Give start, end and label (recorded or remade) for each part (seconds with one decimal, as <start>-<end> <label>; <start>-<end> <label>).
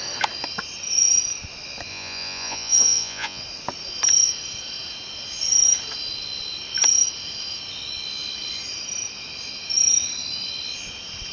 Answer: 0.0-1.9 recorded; 1.9-3.4 remade; 3.4-11.3 recorded